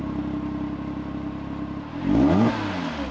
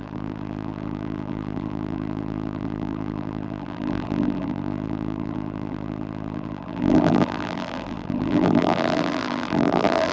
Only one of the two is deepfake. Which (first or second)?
second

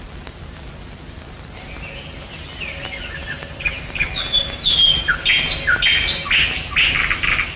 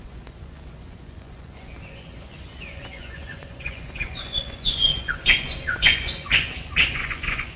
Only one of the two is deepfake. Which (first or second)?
second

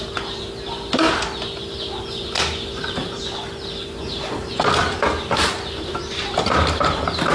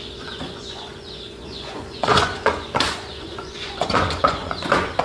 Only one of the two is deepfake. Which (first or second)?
second